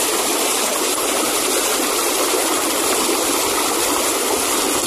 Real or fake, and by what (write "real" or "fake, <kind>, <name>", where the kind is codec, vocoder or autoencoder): real